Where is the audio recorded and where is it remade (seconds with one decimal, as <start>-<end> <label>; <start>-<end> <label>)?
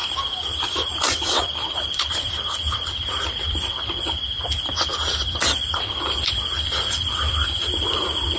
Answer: 0.0-3.7 remade; 3.7-4.9 recorded; 4.9-7.3 remade; 7.3-8.4 recorded